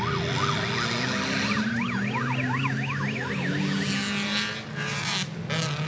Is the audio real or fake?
real